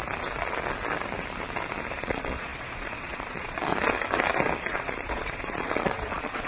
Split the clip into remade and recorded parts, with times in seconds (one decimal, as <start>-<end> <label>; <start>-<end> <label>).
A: 0.0-2.0 recorded; 2.0-3.7 remade; 3.7-4.6 recorded; 4.6-6.5 remade